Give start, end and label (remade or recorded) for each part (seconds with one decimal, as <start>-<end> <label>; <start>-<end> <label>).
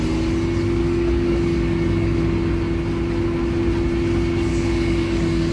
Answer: 0.0-0.8 recorded; 0.8-2.2 remade; 2.2-4.5 recorded; 4.5-5.5 remade